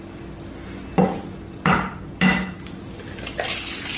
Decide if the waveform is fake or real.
real